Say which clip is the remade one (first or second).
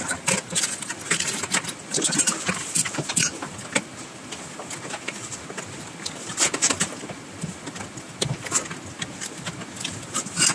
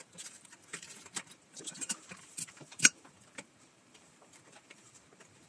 second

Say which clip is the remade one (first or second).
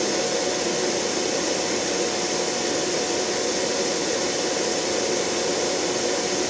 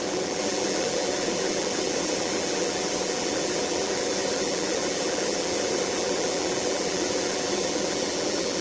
second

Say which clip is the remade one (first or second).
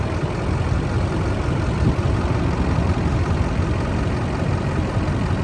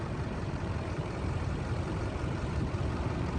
second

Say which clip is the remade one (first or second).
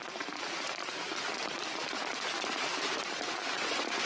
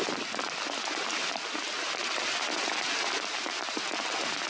first